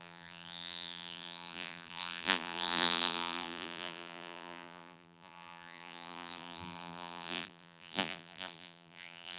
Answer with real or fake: fake